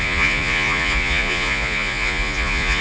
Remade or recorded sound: remade